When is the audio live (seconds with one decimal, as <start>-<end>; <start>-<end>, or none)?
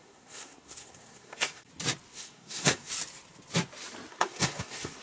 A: 1.7-2.1; 2.9-4.1